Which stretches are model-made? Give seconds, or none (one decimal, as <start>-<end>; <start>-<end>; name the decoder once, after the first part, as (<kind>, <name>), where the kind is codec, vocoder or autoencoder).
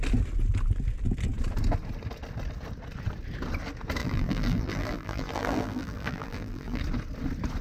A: 4.0-6.8 (vocoder, BigVGAN v2)